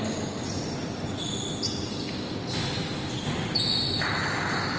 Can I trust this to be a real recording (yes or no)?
yes